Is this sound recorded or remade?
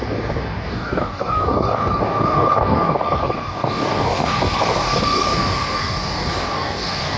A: remade